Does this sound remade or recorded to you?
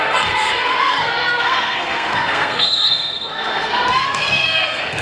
remade